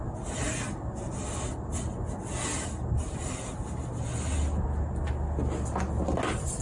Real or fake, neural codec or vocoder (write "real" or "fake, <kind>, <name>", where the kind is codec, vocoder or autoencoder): real